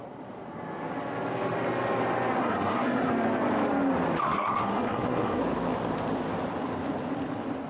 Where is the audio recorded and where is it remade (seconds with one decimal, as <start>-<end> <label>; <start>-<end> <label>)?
0.0-2.4 recorded; 2.4-3.1 remade; 3.1-4.2 recorded; 4.2-5.4 remade; 5.4-7.7 recorded